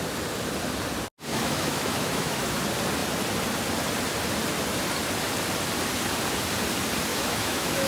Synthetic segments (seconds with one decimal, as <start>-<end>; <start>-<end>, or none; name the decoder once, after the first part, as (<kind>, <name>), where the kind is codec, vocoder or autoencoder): 1.3-2.6 (autoencoder, DAC-VAE); 7.1-7.9